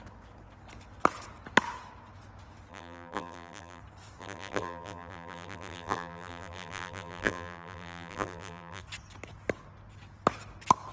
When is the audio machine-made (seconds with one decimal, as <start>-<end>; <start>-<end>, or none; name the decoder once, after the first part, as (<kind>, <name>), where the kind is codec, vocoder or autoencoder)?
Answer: 2.7-3.8 (vocoder, BigVGAN v2); 4.2-8.8